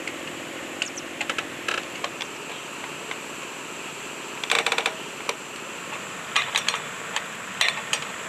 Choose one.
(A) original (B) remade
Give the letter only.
A